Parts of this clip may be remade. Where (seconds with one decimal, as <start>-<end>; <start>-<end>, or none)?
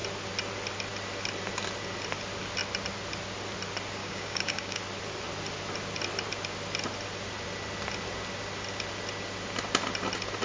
4.0-4.8